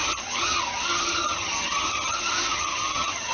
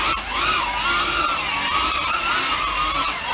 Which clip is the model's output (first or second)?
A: first